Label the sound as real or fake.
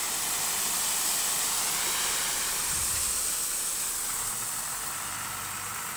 real